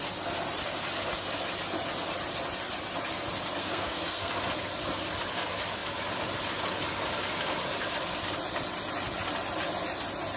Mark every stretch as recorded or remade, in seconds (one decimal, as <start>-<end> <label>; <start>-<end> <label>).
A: 0.0-3.6 recorded; 3.6-4.3 remade; 4.3-10.4 recorded